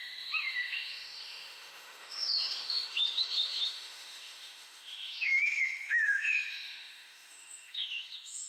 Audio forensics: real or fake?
fake